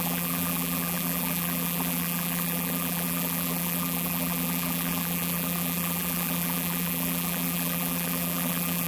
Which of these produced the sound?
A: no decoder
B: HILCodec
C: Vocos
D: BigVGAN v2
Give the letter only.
D